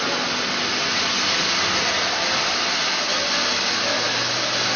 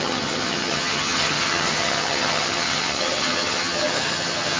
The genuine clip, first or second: first